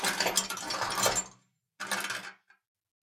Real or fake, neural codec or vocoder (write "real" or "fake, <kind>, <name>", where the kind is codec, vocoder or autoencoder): real